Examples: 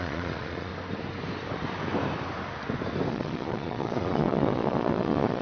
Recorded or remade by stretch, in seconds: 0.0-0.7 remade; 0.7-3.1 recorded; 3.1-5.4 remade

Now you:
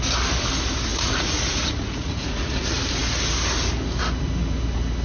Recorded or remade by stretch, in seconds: 0.0-0.9 recorded; 0.9-2.6 remade; 2.6-5.0 recorded

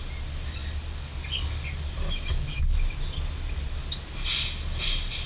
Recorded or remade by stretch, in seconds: 0.0-5.3 recorded

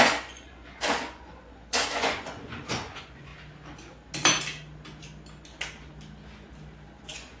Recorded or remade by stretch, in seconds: 0.0-3.3 remade; 3.3-7.0 recorded; 7.0-7.4 remade

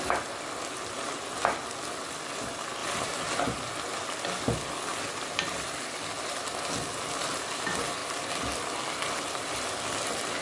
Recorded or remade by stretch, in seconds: 0.0-10.4 recorded

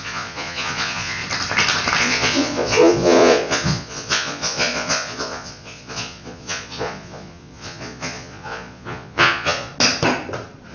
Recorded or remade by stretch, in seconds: 0.0-1.2 remade; 1.2-2.0 recorded; 2.0-9.7 remade; 9.7-10.7 recorded

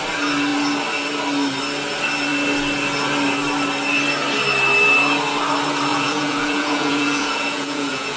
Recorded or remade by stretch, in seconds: 0.0-5.9 recorded; 5.9-8.2 remade